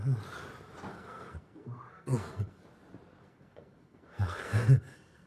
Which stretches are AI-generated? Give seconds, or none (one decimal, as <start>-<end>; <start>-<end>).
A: 0.9-2.6; 3.2-5.3